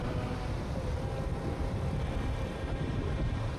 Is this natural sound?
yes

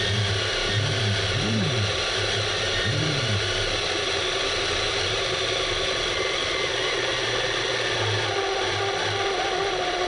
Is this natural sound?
yes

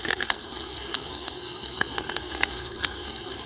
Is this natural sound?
no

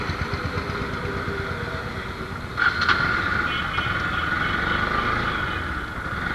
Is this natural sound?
yes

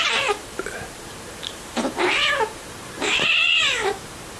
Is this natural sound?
no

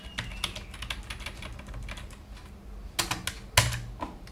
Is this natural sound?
yes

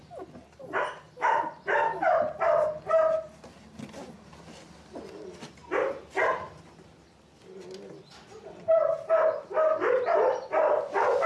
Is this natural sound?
yes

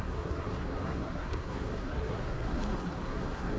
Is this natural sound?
no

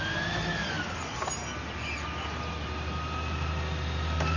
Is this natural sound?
yes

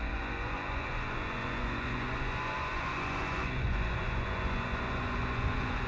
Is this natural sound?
no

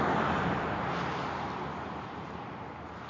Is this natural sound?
yes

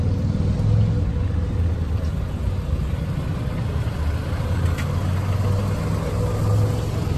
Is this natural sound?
yes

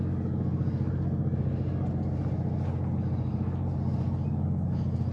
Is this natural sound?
yes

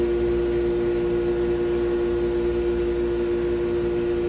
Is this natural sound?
yes